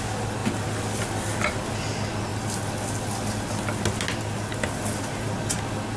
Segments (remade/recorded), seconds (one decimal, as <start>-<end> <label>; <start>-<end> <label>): 0.0-6.0 recorded